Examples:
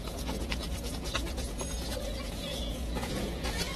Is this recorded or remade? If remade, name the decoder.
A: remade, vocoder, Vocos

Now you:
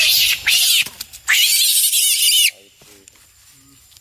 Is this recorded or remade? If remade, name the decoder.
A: recorded